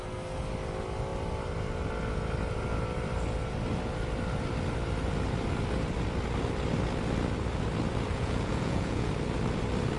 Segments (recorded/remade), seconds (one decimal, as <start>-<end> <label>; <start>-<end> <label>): 0.0-8.1 recorded; 8.1-9.1 remade; 9.1-10.0 recorded